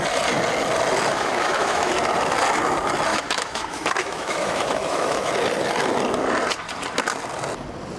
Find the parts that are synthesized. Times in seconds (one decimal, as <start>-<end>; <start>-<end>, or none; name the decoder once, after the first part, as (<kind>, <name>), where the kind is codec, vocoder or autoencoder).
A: 1.1-1.9 (autoencoder, DAC-VAE); 3.1-5.3